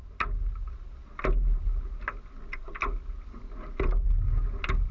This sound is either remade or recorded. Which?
recorded